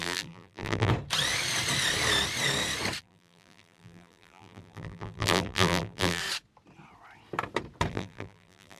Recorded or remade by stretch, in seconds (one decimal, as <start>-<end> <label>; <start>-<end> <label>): 0.0-0.9 remade; 0.9-3.0 recorded; 3.0-6.2 remade; 6.2-7.9 recorded; 7.9-8.8 remade